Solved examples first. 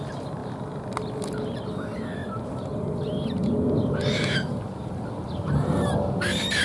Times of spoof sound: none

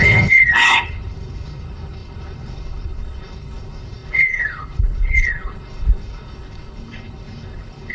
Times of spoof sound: 0.0-7.9 (codec, HILCodec)

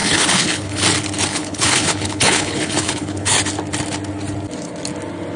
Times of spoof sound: 0.0-0.8 (codec, HILCodec); 1.3-3.4

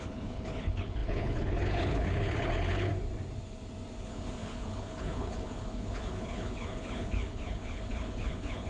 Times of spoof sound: 0.0-2.9 (codec, HILCodec); 4.0-8.7

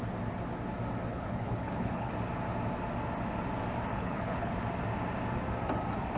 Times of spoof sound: 1.1-2.1 (codec, HILCodec); 3.9-4.5

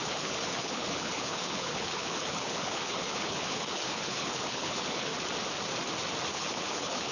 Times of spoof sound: 0.0-5.1 (codec, HILCodec); 6.3-7.1

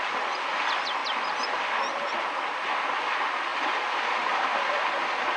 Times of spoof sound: none